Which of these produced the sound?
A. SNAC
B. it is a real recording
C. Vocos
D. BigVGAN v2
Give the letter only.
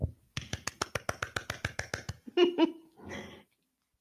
B